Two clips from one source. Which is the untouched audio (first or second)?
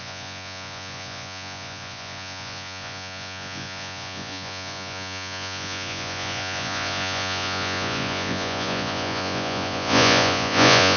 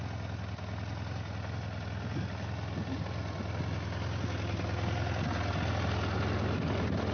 second